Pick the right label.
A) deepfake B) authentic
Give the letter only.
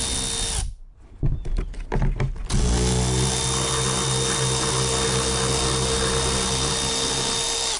B